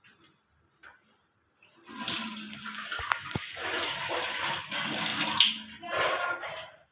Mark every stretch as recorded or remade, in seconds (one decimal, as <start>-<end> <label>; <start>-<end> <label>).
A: 0.0-6.9 recorded